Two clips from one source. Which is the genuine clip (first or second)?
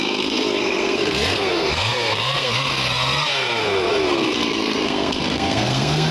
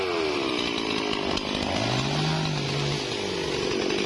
second